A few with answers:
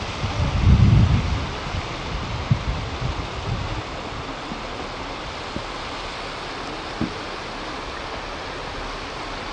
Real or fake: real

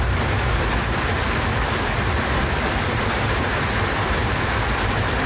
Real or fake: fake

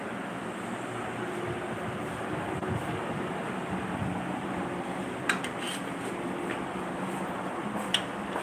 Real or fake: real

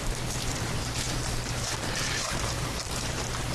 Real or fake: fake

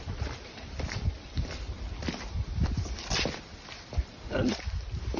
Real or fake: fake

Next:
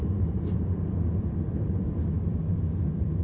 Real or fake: fake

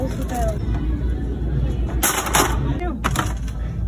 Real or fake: real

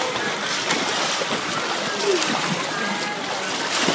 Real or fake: real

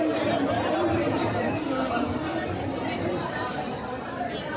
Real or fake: fake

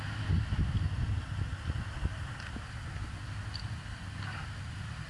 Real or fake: real